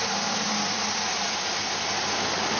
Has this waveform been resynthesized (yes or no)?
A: no